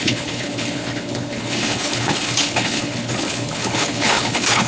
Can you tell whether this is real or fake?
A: fake